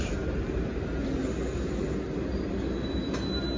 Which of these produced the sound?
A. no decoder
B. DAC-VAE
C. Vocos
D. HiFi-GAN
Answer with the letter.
A